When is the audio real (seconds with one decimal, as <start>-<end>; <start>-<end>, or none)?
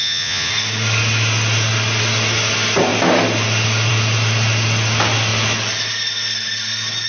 0.5-7.1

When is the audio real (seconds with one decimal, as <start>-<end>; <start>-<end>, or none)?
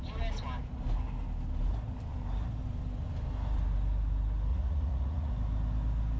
0.0-4.5; 5.3-6.2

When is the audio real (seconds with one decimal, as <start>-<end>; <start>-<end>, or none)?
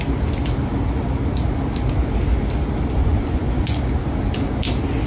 0.0-3.0; 3.8-5.1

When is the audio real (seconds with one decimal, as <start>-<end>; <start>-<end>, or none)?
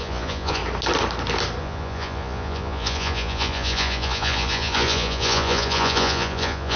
0.6-1.6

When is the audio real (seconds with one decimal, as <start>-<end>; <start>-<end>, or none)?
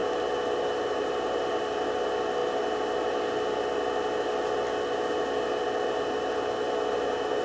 0.0-7.4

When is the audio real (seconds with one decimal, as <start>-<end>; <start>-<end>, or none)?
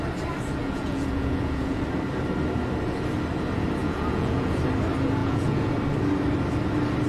0.0-0.6; 1.8-3.8; 4.6-5.2; 5.7-7.1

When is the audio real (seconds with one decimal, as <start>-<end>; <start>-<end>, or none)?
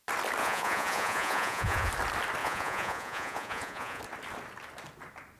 0.0-0.4; 1.9-2.4; 4.0-5.4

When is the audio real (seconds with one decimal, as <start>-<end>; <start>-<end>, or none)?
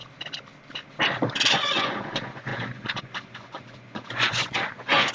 0.0-1.5